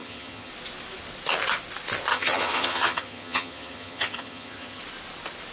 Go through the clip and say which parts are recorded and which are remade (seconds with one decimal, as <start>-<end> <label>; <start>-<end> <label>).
0.0-0.5 remade; 0.5-2.1 recorded; 2.1-4.8 remade; 4.8-5.5 recorded